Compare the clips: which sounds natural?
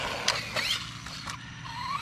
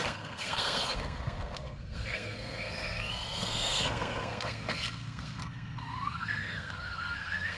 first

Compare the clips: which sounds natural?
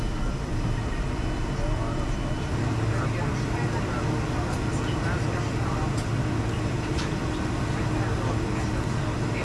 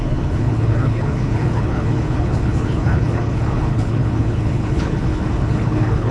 first